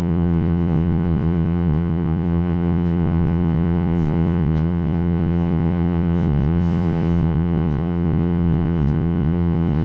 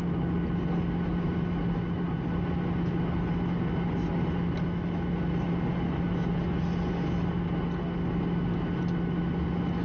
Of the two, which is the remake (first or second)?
first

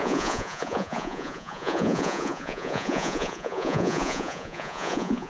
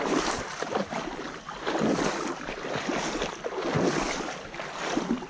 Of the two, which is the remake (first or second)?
first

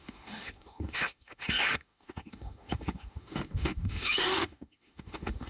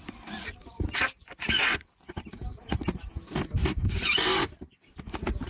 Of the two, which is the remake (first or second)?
first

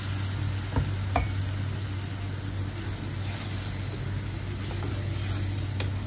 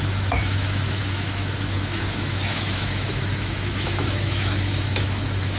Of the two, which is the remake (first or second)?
second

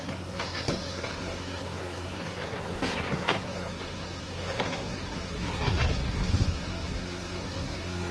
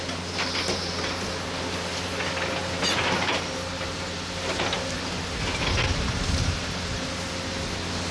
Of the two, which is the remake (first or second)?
first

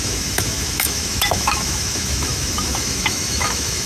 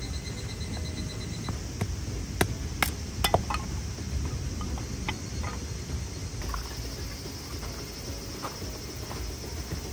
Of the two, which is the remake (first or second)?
first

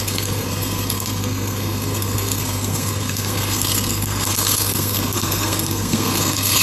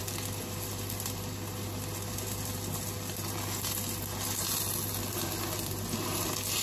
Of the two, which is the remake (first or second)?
first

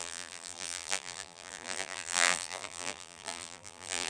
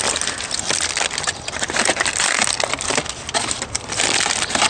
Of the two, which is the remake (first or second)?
first